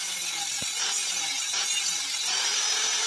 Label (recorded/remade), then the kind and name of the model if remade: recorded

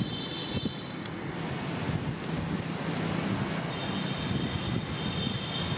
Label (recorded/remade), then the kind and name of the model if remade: recorded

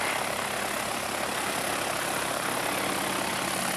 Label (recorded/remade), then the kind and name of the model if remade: recorded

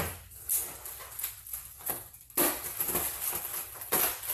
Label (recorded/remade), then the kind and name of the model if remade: recorded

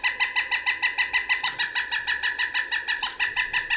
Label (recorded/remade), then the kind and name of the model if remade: recorded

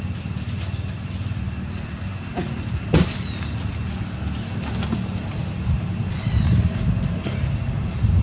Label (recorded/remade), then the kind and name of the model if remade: recorded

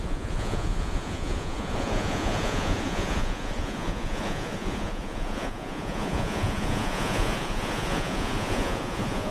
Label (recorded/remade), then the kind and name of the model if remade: remade, vocoder, Vocos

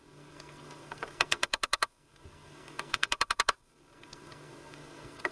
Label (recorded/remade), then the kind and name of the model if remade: remade, codec, SNAC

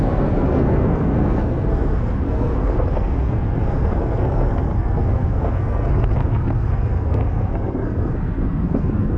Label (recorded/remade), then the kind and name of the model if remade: remade, codec, SNAC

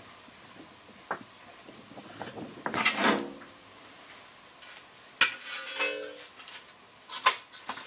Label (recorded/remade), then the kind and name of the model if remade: recorded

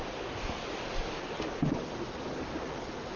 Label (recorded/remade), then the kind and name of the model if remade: recorded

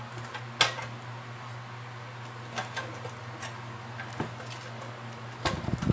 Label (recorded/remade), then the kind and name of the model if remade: recorded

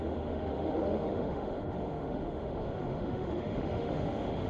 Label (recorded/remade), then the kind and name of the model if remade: remade, autoencoder, DAC-VAE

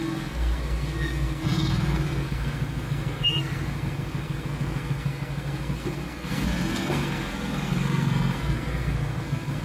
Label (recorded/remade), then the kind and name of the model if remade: remade, codec, SNAC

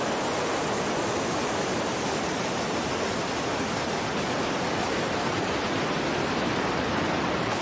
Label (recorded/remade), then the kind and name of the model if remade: recorded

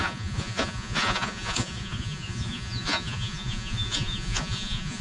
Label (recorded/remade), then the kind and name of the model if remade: remade, vocoder, Vocos